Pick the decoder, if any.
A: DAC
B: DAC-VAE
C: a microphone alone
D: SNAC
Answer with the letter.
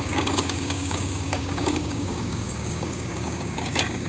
A